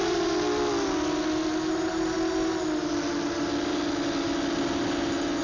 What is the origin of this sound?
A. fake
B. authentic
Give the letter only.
B